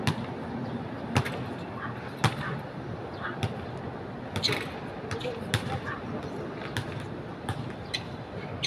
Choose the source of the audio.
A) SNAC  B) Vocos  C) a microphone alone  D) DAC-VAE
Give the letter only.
C